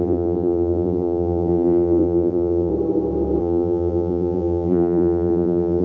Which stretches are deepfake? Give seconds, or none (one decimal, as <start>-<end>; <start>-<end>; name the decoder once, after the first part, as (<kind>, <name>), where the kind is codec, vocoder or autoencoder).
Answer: 0.0-2.7 (vocoder, BigVGAN v2); 3.4-5.8